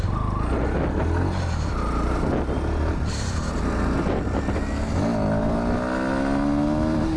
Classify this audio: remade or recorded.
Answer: recorded